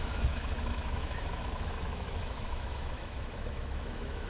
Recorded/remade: remade